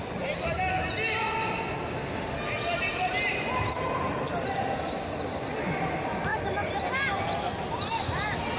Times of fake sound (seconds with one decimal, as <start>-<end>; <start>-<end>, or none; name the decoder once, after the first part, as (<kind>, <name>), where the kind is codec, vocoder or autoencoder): 6.3-6.9 (vocoder, BigVGAN v2)